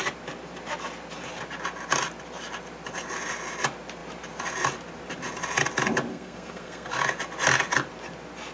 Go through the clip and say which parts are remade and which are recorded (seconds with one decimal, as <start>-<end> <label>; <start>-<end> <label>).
0.0-6.1 recorded; 6.1-6.9 remade; 6.9-8.5 recorded